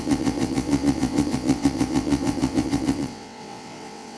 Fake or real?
fake